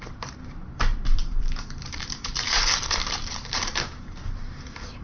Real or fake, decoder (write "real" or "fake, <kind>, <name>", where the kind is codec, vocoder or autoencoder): fake, vocoder, BigVGAN v2